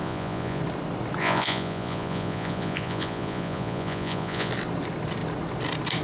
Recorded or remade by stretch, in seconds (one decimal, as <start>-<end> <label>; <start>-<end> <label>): 0.0-0.6 remade; 0.6-1.2 recorded; 1.2-4.5 remade; 4.5-6.0 recorded